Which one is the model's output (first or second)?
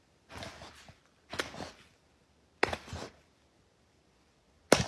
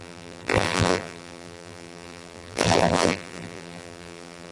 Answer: second